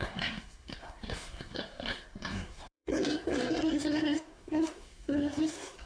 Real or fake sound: fake